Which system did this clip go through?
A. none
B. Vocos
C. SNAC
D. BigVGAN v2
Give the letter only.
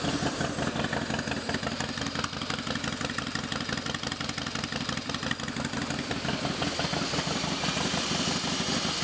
A